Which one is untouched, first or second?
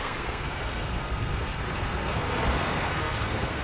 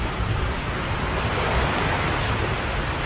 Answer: second